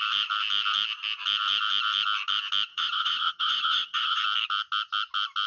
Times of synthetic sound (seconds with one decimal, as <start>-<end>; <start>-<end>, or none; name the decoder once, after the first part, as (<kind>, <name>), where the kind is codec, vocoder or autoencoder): 2.7-4.2 (vocoder, HiFi-GAN)